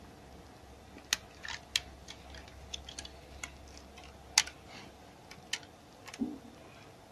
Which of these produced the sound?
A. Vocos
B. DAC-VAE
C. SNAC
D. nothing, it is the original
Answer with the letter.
D